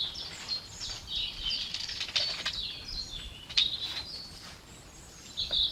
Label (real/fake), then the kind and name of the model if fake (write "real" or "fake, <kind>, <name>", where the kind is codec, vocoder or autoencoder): real